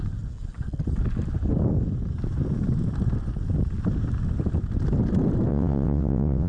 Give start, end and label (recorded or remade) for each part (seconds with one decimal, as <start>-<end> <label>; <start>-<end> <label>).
0.0-5.5 recorded; 5.5-6.5 remade